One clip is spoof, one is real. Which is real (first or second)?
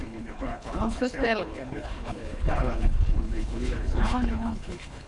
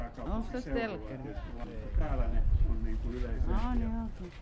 second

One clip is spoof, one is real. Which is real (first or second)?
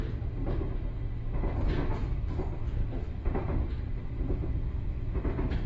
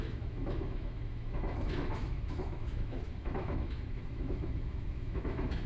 first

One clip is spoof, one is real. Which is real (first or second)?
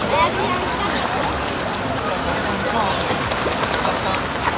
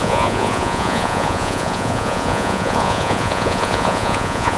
first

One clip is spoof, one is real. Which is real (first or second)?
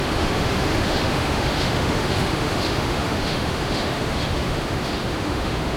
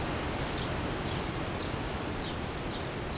second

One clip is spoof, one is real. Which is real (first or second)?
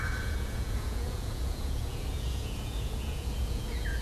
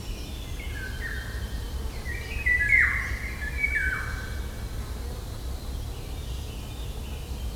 second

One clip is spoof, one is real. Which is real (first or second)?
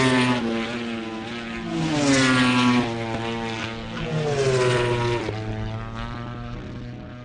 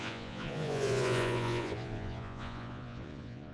first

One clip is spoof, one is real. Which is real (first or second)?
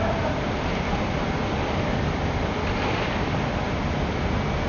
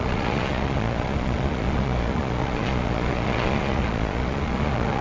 first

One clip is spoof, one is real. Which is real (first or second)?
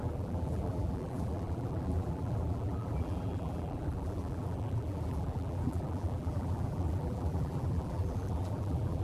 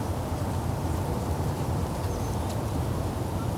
second